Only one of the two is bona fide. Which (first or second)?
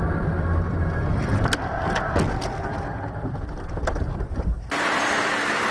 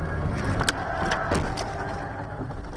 second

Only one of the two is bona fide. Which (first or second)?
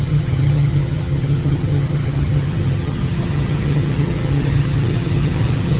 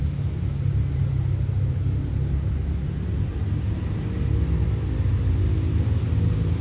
second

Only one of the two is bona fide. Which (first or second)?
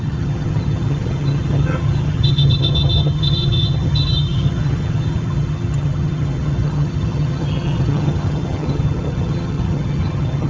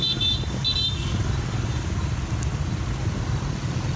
second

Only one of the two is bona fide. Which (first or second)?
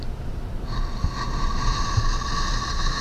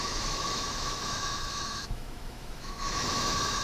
first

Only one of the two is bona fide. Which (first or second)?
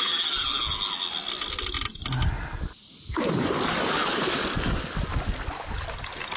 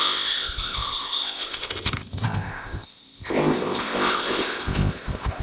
first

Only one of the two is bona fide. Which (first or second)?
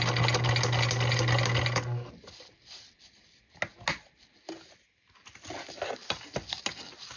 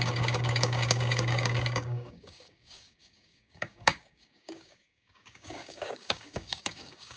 first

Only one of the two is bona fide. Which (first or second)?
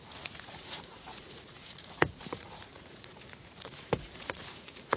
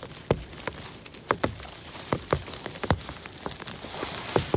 second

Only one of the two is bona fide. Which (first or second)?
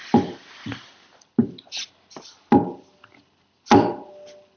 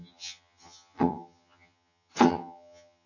first